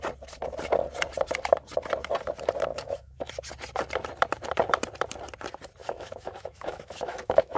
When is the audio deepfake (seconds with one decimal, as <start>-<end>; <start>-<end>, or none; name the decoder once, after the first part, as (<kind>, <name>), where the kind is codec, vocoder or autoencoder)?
2.7-3.3 (autoencoder, DAC-VAE); 5.8-7.6